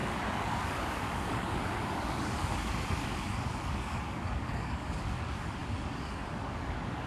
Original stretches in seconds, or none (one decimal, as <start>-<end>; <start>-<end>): none